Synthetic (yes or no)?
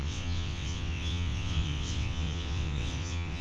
yes